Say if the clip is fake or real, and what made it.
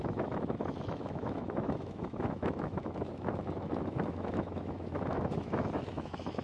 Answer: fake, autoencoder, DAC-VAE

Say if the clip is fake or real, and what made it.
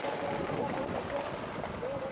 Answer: real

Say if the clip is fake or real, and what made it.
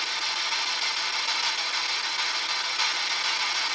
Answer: real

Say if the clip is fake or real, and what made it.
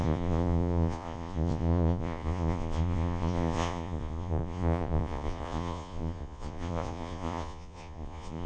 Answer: fake, vocoder, Vocos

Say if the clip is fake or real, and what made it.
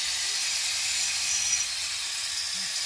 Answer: fake, vocoder, BigVGAN v2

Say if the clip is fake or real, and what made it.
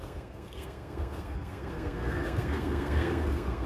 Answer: fake, codec, SNAC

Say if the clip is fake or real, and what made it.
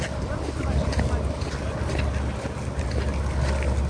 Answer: real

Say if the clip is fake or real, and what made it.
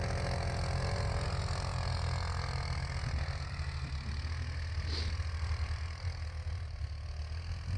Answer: real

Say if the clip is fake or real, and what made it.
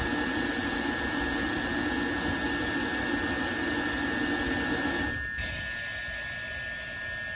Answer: real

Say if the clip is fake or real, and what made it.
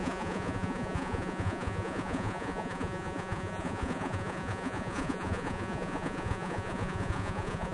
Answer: fake, vocoder, Vocos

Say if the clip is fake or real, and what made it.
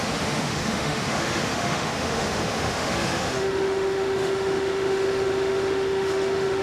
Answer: fake, autoencoder, DAC-VAE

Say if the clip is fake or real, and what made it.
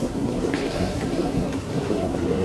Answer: fake, codec, SNAC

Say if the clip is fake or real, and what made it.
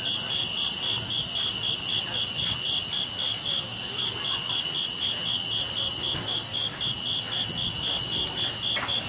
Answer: real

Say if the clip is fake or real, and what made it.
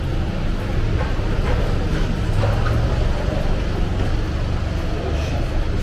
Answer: real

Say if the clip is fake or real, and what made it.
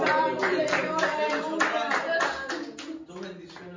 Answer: real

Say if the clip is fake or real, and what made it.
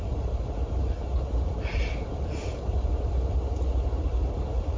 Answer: real